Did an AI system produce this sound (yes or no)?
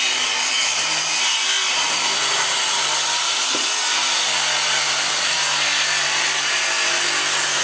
no